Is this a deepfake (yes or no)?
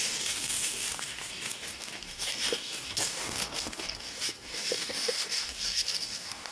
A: yes